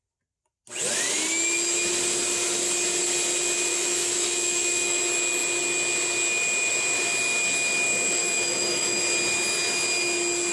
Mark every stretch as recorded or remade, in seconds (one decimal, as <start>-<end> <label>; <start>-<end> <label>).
0.0-3.7 recorded; 3.7-5.0 remade; 5.0-8.2 recorded; 8.2-9.0 remade; 9.0-10.5 recorded